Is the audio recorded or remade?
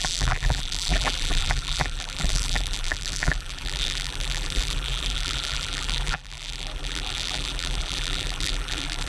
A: remade